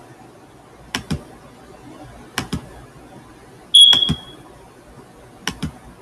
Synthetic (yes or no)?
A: no